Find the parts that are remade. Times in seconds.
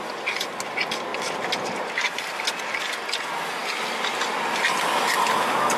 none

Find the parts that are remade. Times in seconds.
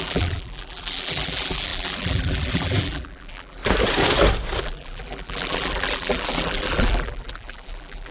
0.0-3.6 (vocoder, BigVGAN v2); 4.6-8.1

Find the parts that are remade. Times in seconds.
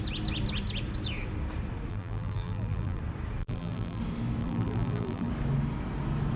1.9-3.0 (vocoder, BigVGAN v2); 3.4-4.0; 4.4-5.3